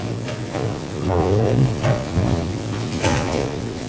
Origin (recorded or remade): remade